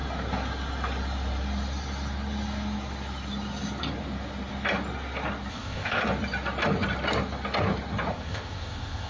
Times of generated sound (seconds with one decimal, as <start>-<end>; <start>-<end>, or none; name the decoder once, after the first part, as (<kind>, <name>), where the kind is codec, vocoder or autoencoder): 5.5-6.0 (codec, ZipCodec); 8.1-9.1